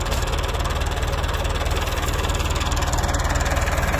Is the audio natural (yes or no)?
yes